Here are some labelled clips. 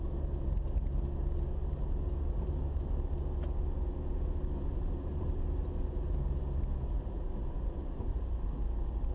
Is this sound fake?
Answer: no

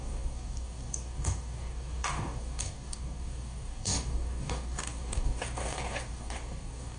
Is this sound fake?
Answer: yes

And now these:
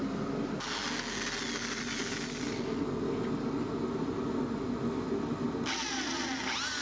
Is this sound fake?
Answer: no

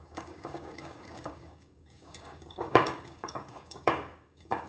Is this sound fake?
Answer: yes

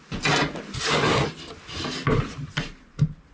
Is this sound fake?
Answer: no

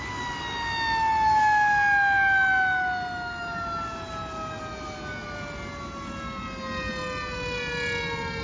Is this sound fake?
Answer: no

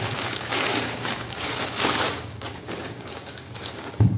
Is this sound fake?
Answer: yes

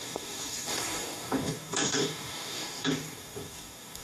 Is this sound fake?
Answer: yes